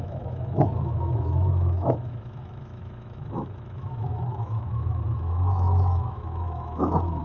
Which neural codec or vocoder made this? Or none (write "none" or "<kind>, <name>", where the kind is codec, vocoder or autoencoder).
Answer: autoencoder, DAC-VAE